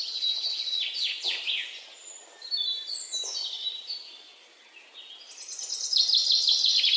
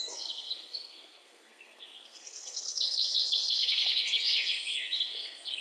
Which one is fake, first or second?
second